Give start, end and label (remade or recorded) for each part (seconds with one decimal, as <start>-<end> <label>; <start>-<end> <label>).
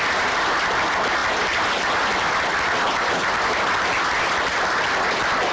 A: 0.0-5.5 recorded